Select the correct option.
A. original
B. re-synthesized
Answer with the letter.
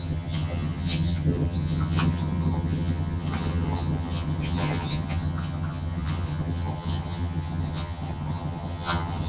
B